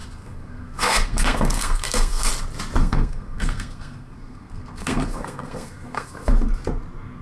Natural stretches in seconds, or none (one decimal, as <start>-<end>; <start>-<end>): 2.3-2.8; 6.3-7.2